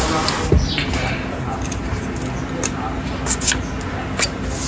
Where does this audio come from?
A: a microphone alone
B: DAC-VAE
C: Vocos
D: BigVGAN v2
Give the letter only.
A